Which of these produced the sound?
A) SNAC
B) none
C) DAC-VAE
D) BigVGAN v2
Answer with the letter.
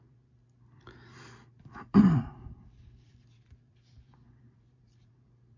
D